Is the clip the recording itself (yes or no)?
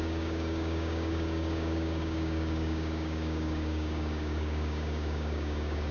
no